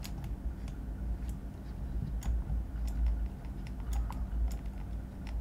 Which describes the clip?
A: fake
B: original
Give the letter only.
B